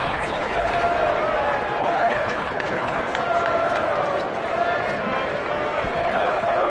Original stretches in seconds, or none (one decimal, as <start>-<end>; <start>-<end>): 0.7-1.8; 3.0-6.0